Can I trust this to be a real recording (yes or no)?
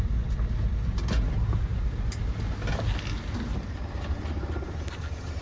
yes